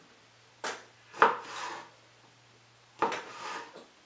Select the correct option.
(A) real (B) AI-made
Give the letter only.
A